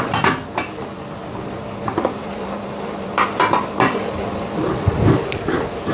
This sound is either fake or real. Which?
real